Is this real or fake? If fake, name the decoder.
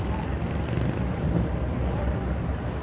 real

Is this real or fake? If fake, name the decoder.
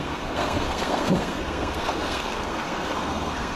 fake, codec, SNAC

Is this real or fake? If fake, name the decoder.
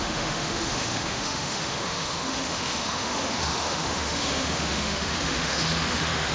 fake, autoencoder, DAC-VAE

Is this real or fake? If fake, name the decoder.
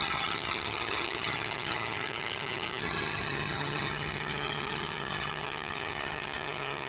fake, vocoder, HiFi-GAN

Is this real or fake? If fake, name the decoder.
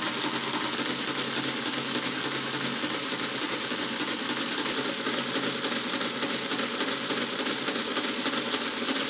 real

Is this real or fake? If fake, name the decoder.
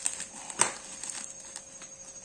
real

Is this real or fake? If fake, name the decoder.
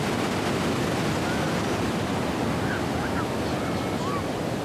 real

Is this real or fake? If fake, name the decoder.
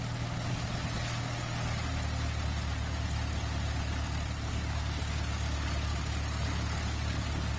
real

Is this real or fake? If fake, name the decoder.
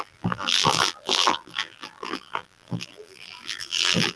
fake, vocoder, BigVGAN v2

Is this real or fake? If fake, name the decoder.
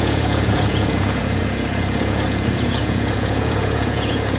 fake, vocoder, Vocos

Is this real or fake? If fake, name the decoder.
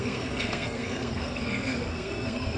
fake, codec, SNAC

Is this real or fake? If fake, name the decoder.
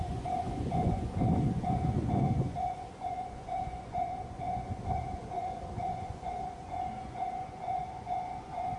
fake, vocoder, Vocos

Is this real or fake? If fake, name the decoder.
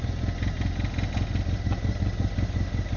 real